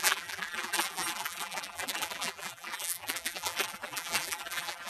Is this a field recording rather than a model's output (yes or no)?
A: no